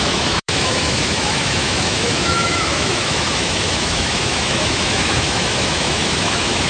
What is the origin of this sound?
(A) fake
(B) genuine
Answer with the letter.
A